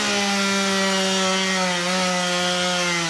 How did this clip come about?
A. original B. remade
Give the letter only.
A